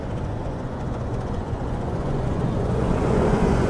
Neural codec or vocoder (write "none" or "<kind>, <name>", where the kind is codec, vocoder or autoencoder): vocoder, Vocos